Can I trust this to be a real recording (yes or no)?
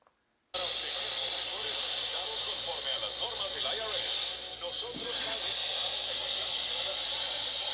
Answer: yes